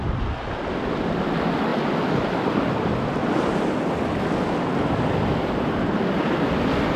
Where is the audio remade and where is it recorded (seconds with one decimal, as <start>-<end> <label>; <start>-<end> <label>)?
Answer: 0.0-7.0 recorded

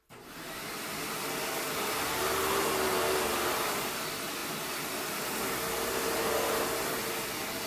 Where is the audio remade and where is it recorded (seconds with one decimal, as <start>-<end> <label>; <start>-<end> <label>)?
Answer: 0.0-7.7 recorded

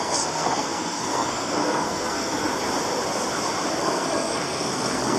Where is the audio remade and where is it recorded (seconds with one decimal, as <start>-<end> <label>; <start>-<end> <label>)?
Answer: 0.0-2.5 remade; 2.5-3.8 recorded; 3.8-5.2 remade

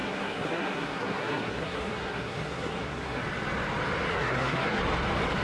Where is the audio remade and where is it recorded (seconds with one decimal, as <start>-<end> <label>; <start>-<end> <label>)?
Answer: 0.0-3.2 remade; 3.2-4.1 recorded; 4.1-4.8 remade; 4.8-5.4 recorded

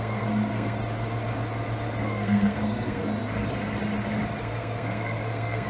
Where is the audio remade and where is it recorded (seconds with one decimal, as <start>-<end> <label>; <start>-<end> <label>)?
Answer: 0.0-0.8 remade; 0.8-2.0 recorded; 2.0-3.0 remade; 3.0-4.4 recorded; 4.4-5.7 remade

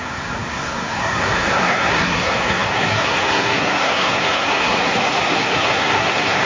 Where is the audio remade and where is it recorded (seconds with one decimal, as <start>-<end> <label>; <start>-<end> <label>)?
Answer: 0.0-6.5 remade

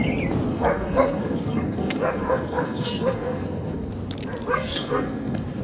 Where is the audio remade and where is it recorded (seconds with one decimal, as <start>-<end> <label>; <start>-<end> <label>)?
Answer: 0.0-0.5 recorded; 0.5-3.9 remade; 3.9-4.5 recorded; 4.5-5.6 remade

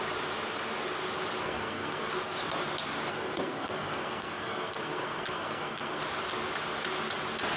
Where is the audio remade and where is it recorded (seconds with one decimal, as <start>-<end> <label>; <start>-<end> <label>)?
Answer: 0.0-1.4 recorded; 1.4-2.1 remade; 2.1-3.1 recorded; 3.1-6.0 remade; 6.0-7.6 recorded